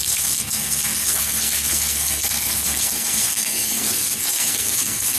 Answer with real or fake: fake